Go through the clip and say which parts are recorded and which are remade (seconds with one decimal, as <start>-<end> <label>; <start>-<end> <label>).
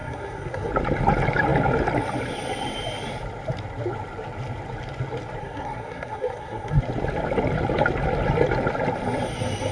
0.0-0.7 remade; 0.7-5.4 recorded; 5.4-6.8 remade; 6.8-9.7 recorded